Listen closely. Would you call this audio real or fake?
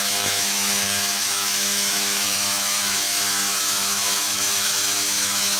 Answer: fake